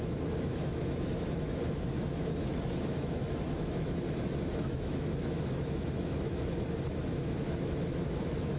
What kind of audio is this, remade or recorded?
remade